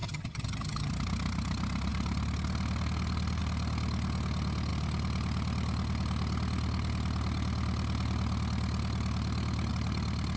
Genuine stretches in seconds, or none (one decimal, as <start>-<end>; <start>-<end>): 0.9-10.4